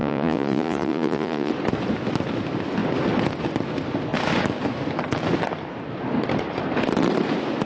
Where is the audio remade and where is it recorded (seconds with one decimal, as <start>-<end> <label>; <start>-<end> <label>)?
0.0-1.5 remade; 1.5-7.7 recorded